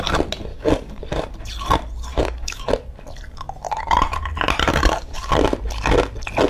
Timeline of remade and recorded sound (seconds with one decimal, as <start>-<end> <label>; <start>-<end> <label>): 0.0-0.5 recorded; 0.5-1.0 remade; 1.0-2.1 recorded; 2.1-2.7 remade; 2.7-4.7 recorded; 4.7-5.3 remade; 5.3-6.5 recorded